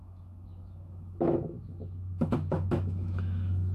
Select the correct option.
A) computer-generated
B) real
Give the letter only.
A